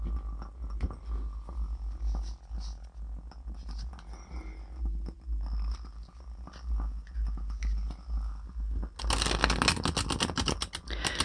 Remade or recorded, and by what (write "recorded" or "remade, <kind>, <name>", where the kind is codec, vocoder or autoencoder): recorded